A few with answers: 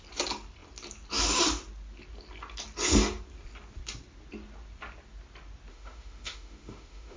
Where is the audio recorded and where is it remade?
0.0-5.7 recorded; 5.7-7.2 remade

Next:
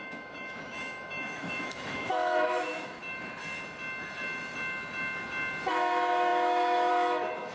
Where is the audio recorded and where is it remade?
0.0-3.0 remade; 3.0-5.7 recorded; 5.7-7.5 remade